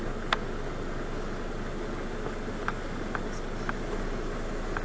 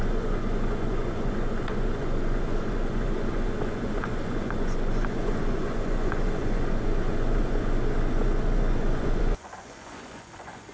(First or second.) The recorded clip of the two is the first